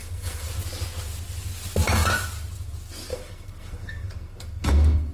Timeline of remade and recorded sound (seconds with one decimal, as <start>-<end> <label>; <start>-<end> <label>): 0.0-0.5 remade; 0.5-3.1 recorded; 3.1-5.1 remade